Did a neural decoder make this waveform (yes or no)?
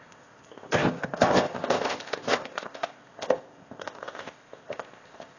yes